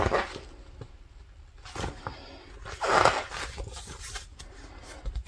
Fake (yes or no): no